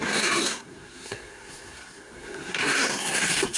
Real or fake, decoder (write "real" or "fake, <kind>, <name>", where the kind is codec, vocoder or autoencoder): fake, codec, SNAC